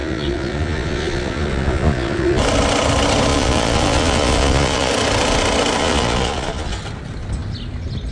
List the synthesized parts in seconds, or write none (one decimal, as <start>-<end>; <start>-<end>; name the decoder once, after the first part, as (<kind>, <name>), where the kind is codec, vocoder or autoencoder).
0.0-2.4 (vocoder, Vocos); 3.3-4.9; 5.8-6.8